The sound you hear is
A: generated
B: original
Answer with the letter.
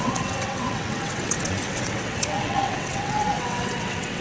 A